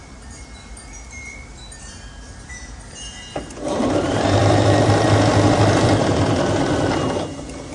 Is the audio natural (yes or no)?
no